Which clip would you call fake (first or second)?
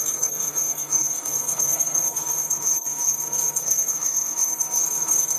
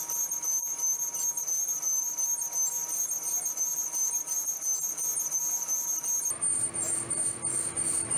first